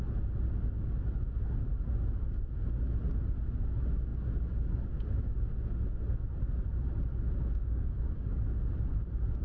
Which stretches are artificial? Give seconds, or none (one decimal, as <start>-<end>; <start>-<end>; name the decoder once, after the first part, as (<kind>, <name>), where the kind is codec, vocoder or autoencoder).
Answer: 7.6-8.4 (codec, DAC)